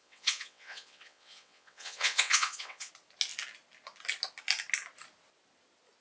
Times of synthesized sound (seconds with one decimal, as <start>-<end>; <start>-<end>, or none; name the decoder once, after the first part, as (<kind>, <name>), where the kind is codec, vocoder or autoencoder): 0.0-2.9 (vocoder, WaveNeXt)